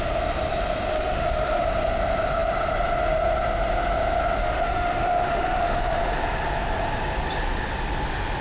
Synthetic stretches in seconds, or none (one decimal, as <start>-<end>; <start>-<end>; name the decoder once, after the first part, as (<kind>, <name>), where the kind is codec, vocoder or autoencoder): 0.9-1.6 (autoencoder, DAC-VAE); 4.4-6.0